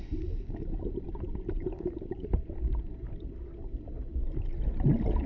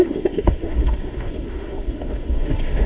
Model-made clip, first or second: second